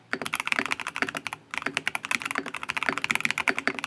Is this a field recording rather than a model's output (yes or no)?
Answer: yes